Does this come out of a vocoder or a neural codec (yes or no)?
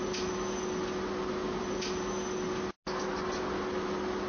no